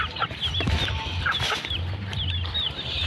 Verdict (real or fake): real